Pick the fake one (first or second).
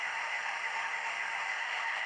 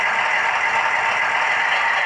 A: first